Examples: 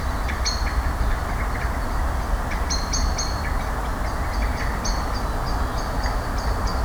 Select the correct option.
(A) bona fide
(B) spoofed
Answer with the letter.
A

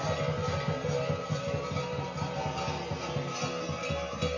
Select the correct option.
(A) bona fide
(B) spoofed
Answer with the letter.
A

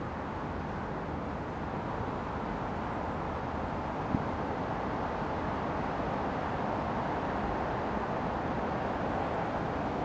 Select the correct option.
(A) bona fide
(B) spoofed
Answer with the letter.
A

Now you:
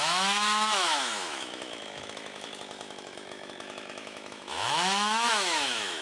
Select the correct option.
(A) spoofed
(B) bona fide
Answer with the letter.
A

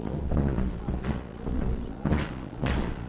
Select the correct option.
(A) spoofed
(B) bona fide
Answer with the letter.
A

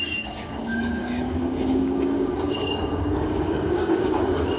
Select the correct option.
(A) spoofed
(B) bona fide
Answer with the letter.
A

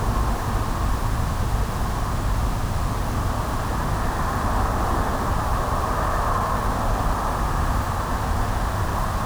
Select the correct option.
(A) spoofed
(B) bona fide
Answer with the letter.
B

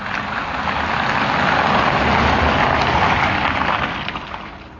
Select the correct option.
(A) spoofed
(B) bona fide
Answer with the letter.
B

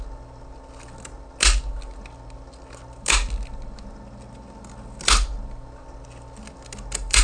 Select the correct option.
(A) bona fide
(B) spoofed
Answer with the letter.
A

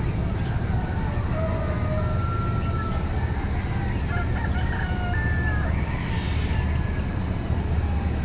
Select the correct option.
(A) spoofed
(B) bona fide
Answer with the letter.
B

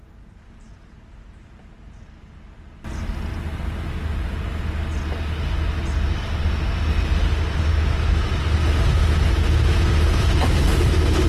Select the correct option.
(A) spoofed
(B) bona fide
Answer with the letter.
B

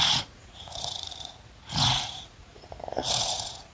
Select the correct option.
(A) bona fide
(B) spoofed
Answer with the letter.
B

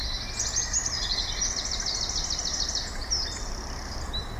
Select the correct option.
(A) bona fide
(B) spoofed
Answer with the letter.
A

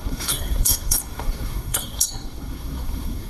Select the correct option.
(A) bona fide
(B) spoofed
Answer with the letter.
B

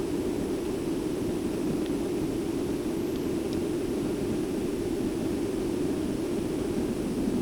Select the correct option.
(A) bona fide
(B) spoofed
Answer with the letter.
A